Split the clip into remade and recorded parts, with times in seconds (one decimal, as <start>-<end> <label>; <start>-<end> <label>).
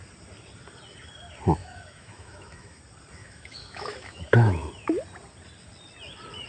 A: 0.0-1.6 recorded; 1.6-2.8 remade; 2.8-3.2 recorded; 3.2-4.7 remade; 4.7-6.5 recorded